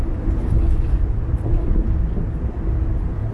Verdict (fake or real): real